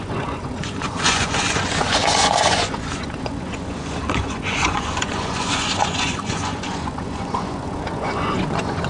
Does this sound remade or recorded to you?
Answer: remade